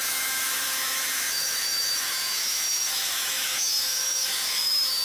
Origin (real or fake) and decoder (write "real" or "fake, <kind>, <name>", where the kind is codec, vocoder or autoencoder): fake, autoencoder, DAC-VAE